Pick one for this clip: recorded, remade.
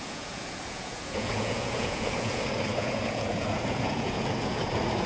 remade